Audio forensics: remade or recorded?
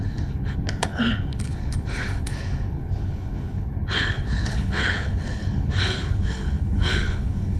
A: remade